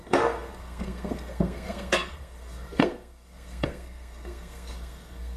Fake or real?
fake